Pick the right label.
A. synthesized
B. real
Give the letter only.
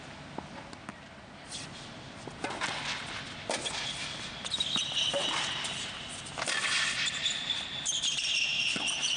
B